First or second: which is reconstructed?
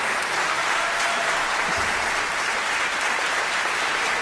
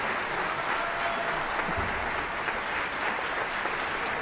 first